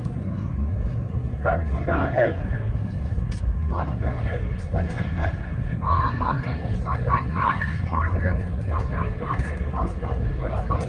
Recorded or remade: remade